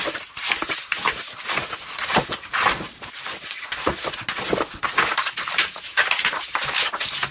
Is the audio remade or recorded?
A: recorded